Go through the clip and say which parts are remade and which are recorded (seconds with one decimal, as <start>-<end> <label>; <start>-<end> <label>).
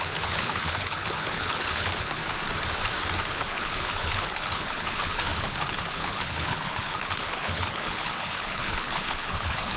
0.0-2.2 remade; 2.2-3.3 recorded; 3.3-9.8 remade